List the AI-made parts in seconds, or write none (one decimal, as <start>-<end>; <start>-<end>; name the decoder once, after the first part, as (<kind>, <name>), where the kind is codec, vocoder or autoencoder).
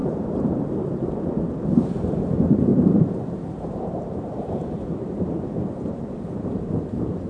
0.0-0.7 (vocoder, BigVGAN v2); 2.7-7.3